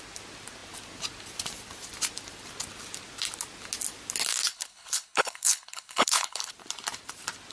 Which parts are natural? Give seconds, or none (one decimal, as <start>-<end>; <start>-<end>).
0.0-4.5; 6.5-7.5